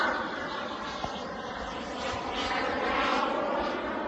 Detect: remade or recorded remade